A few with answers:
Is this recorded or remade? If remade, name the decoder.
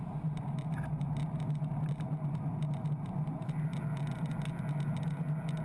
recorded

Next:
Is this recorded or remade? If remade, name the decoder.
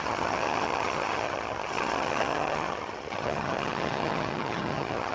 remade, vocoder, HiFi-GAN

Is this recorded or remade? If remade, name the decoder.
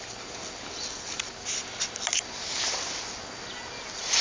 recorded